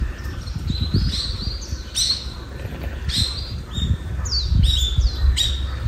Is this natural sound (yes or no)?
yes